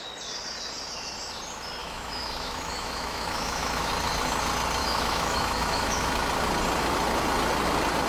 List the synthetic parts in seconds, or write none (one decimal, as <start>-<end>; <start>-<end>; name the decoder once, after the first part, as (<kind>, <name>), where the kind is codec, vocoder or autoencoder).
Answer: 1.8-3.9 (autoencoder, DAC-VAE); 4.8-6.1